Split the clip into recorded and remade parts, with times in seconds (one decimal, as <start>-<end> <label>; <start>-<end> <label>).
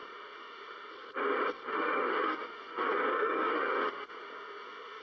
0.0-0.9 remade; 0.9-1.7 recorded; 1.7-5.0 remade